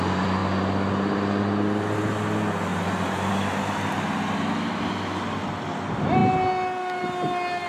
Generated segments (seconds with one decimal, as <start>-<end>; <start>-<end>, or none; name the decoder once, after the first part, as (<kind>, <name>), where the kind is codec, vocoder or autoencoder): none